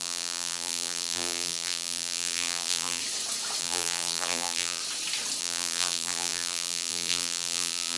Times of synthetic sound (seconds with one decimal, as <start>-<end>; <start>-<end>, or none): 0.0-3.0; 3.6-4.8; 5.4-8.0